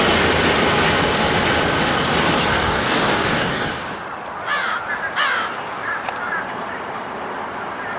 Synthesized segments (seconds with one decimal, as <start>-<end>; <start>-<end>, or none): 2.5-3.7